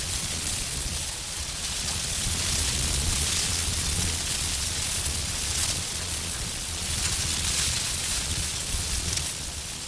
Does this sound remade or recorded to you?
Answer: remade